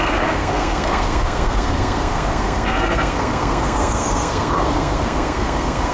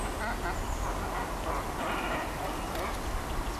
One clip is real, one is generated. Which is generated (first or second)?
first